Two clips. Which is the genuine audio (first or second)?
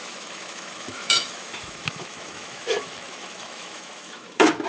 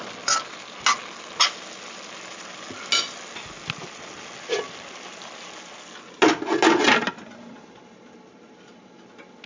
second